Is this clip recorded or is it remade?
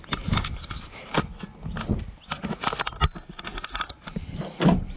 recorded